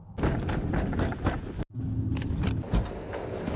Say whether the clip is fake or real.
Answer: real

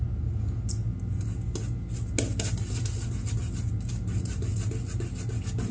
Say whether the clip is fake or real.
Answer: real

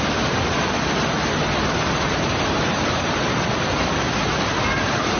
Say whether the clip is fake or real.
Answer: real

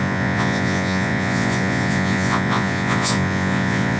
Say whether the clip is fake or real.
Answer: fake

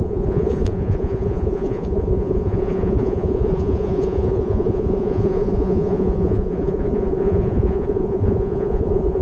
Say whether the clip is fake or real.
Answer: fake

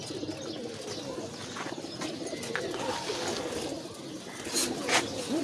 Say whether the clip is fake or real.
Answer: real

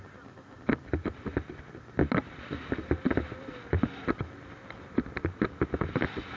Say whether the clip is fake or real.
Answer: real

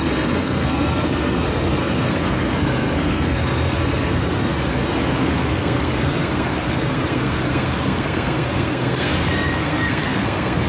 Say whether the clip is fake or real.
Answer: fake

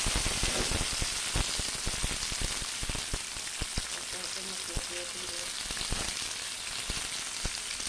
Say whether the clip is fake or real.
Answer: real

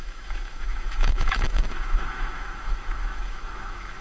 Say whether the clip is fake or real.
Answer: fake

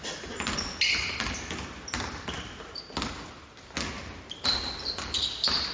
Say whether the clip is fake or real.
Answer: real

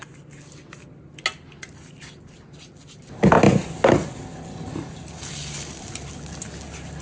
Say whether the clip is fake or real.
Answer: real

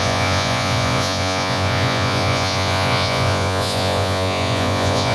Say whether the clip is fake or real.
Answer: fake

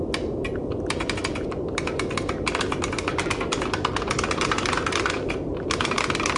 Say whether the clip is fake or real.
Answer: real